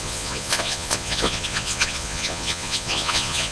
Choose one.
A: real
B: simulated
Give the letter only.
B